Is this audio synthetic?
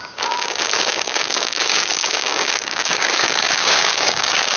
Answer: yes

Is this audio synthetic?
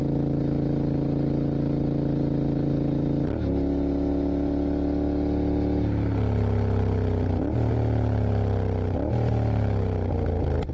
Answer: no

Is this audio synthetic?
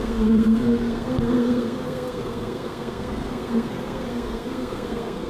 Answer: yes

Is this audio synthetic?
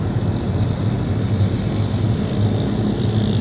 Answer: no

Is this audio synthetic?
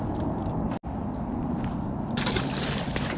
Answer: no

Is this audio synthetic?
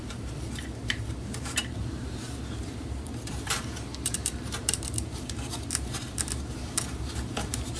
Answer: yes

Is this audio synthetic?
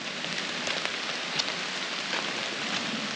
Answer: no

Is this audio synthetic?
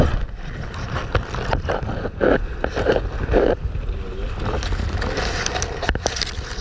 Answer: no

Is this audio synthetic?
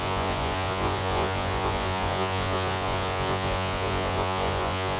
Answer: yes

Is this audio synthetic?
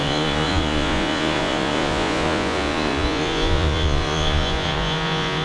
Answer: yes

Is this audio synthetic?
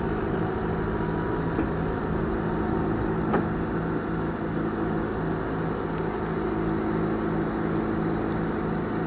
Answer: no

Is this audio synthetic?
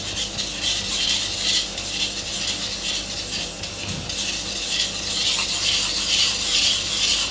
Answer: no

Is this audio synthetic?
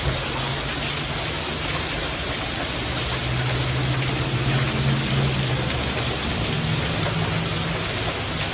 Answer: no